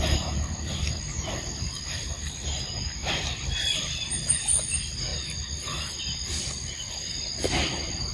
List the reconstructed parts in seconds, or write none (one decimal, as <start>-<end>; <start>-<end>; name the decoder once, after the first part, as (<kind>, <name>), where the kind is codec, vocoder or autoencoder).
none